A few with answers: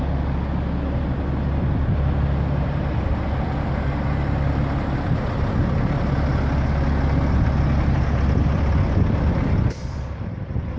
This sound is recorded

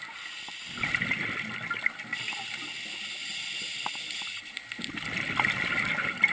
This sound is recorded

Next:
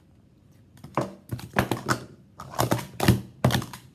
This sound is recorded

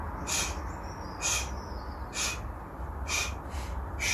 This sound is recorded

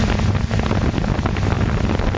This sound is recorded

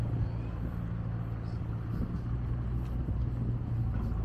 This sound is recorded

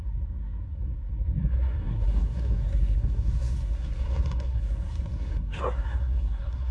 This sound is remade